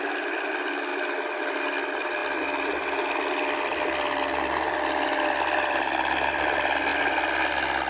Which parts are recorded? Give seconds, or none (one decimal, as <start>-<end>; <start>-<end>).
0.0-7.9